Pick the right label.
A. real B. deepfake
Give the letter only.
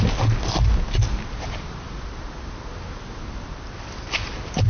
A